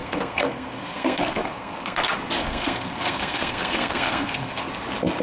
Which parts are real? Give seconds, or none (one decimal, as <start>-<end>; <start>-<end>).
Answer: 2.0-2.4; 4.7-5.2